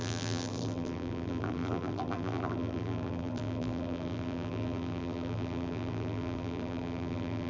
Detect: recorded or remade remade